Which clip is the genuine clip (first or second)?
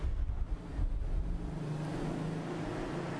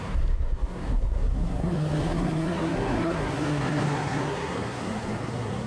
first